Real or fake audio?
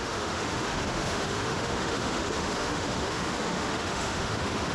fake